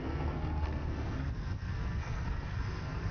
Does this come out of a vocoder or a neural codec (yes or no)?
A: yes